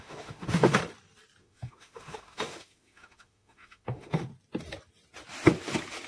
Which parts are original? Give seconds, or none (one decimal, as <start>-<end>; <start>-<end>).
0.8-1.4; 4.3-6.1